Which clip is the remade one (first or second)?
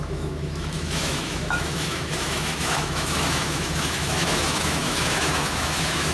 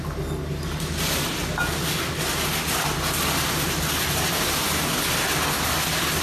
first